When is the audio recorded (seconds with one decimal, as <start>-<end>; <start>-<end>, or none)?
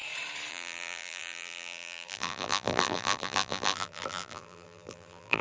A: 0.0-0.5